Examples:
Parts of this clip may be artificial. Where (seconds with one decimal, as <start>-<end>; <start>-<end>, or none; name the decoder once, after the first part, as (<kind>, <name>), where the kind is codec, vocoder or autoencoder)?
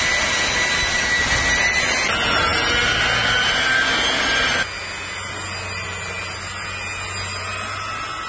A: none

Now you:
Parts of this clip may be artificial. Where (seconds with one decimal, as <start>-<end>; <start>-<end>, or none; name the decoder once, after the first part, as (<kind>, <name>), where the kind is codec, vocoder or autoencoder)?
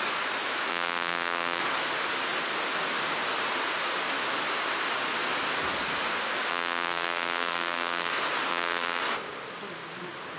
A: 0.7-1.6 (vocoder, BigVGAN v2); 6.5-8.1; 8.5-9.0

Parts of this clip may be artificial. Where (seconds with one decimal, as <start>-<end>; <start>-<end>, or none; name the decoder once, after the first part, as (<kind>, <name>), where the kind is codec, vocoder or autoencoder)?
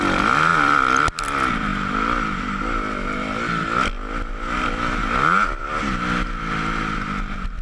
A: 0.5-1.2 (vocoder, BigVGAN v2)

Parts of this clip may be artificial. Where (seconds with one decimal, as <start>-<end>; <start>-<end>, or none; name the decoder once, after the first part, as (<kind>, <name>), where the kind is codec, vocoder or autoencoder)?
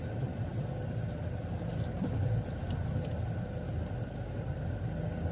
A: none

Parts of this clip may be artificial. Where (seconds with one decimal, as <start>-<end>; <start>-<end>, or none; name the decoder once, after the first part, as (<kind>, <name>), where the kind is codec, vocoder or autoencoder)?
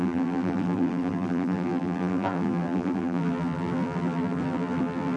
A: 0.0-5.2 (vocoder, BigVGAN v2)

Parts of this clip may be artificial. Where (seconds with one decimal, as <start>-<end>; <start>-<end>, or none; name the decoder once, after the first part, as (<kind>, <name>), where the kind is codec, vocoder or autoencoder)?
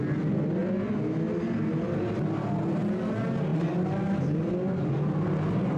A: none